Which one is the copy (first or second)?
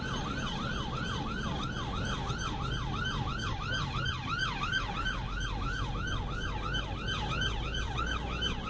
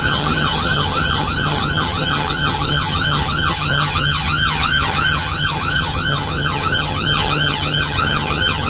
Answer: second